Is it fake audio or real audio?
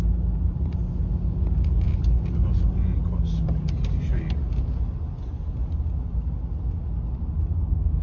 real